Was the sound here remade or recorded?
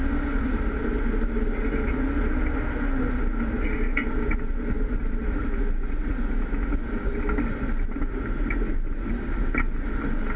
recorded